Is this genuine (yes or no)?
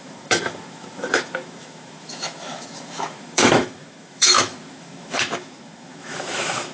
no